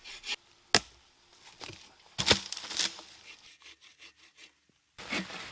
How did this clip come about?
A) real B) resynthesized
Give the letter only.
A